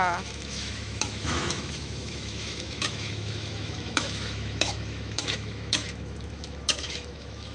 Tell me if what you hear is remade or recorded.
remade